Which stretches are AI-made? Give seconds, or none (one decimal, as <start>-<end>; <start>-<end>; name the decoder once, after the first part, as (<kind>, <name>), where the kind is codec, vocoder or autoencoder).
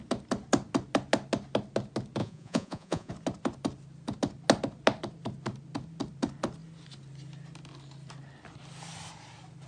2.2-3.1 (vocoder, Vocos)